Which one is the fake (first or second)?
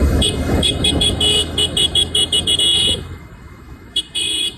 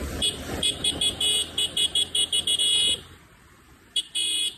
first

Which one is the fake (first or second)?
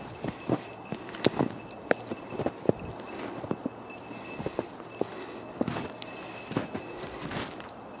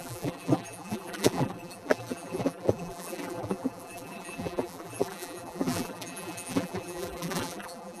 second